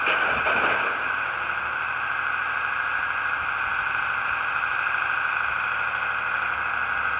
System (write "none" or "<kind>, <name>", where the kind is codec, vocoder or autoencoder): none